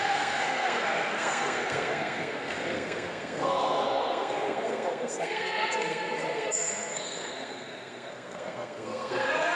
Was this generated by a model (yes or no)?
yes